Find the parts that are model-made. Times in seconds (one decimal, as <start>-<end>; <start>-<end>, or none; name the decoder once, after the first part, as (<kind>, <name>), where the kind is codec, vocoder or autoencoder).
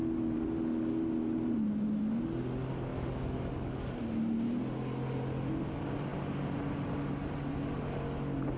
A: 2.9-4.0 (codec, DAC)